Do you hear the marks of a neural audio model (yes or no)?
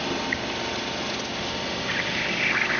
no